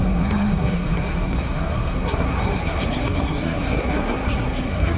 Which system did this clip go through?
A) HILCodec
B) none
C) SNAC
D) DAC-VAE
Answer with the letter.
C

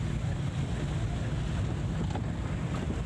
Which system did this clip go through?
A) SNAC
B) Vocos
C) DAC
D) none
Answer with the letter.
D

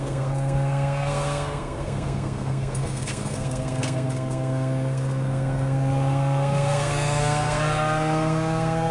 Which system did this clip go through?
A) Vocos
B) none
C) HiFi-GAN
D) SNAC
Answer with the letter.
D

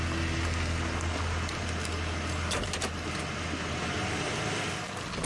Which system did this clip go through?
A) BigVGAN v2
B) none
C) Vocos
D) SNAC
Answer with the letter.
B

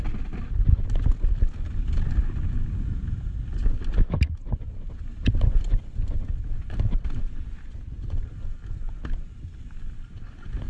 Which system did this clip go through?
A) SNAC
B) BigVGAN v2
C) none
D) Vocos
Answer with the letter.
C